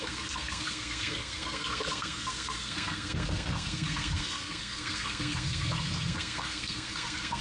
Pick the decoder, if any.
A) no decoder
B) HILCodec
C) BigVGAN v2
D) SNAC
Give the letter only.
D